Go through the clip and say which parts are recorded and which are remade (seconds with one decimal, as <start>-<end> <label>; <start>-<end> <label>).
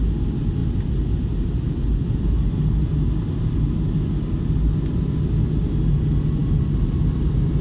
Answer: 0.0-6.4 recorded; 6.4-7.6 remade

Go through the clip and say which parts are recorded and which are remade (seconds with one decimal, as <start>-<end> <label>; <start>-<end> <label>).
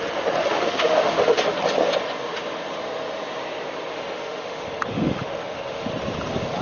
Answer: 0.0-0.4 recorded; 0.4-1.4 remade; 1.4-3.9 recorded; 3.9-5.9 remade; 5.9-6.6 recorded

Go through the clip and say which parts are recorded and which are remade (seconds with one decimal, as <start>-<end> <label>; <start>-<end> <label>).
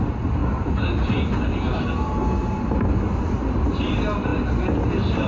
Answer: 0.0-5.3 recorded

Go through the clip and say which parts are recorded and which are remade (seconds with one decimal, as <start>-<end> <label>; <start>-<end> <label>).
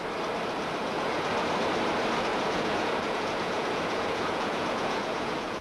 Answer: 0.0-0.8 recorded; 0.8-1.3 remade; 1.3-2.3 recorded; 2.3-5.6 remade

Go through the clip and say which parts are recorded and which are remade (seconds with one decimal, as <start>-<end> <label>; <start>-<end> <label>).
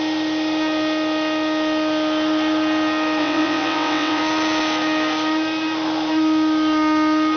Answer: 0.0-3.2 recorded; 3.2-4.2 remade; 4.2-7.4 recorded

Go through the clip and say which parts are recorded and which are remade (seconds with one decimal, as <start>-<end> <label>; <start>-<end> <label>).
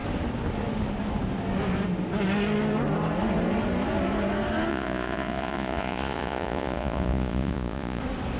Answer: 0.0-4.7 recorded; 4.7-8.0 remade; 8.0-8.4 recorded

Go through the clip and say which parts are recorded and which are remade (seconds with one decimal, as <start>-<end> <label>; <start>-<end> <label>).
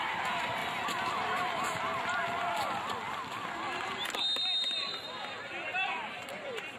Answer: 0.0-0.6 remade; 0.6-1.1 recorded; 1.1-1.9 remade; 1.9-5.5 recorded; 5.5-6.8 remade